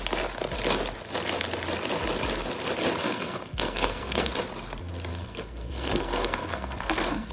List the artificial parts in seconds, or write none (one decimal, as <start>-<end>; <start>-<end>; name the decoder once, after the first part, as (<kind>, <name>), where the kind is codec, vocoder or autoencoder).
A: 3.0-4.3 (codec, SNAC); 5.1-7.3